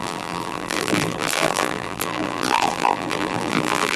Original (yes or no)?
no